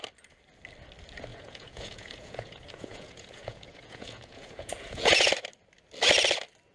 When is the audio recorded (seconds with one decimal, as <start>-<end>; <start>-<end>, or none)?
0.0-1.3; 5.3-6.7